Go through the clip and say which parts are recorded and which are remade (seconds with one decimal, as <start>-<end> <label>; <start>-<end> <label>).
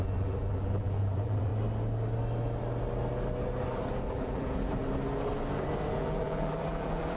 0.0-1.5 remade; 1.5-4.1 recorded; 4.1-4.8 remade; 4.8-5.9 recorded; 5.9-7.2 remade